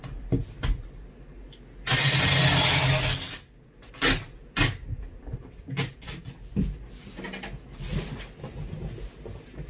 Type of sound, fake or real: real